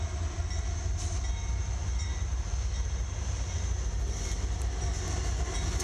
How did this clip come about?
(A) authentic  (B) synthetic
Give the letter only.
A